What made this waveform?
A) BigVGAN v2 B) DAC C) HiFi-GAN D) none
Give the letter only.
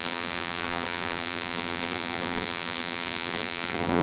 A